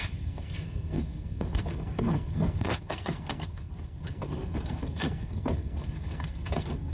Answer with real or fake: fake